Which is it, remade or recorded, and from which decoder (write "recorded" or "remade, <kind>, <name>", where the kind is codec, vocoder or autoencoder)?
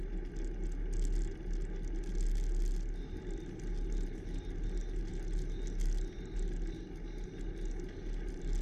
recorded